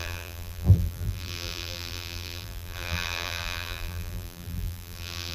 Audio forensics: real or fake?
fake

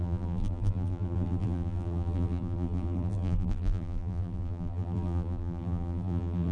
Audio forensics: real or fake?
fake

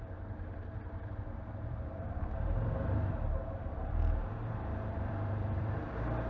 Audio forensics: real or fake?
fake